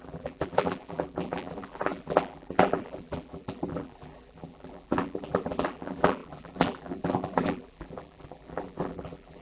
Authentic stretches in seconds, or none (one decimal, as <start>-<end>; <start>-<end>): none

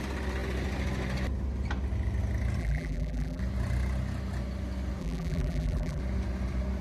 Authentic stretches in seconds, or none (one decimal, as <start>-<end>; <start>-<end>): 0.0-2.6; 3.4-5.0; 6.0-6.8